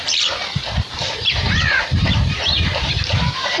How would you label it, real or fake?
fake